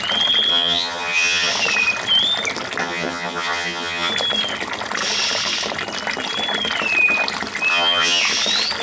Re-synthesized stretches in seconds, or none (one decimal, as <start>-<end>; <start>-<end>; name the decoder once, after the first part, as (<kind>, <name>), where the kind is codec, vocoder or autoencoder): 0.5-1.5 (vocoder, HiFi-GAN); 2.8-4.1; 7.7-8.2